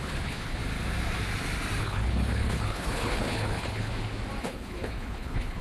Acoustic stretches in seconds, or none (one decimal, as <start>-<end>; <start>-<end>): 0.6-1.8; 3.9-4.4